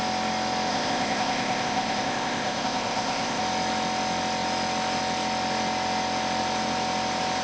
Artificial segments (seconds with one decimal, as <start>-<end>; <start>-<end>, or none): 0.7-3.4